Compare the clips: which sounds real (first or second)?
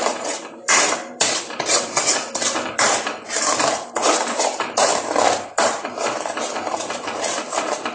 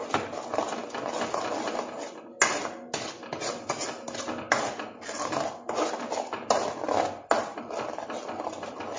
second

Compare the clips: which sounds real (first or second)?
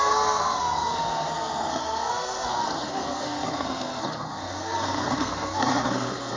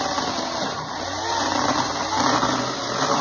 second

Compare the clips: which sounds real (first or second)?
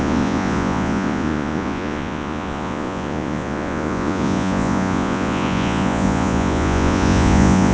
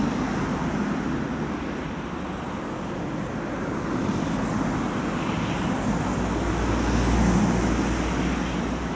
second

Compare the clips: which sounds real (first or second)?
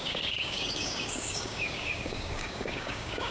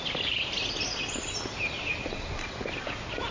second